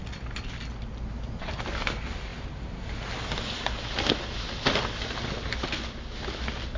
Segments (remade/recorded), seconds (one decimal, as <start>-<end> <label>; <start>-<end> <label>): 0.0-6.8 recorded